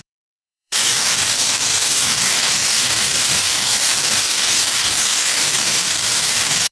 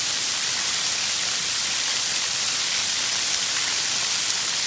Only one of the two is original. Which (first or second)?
second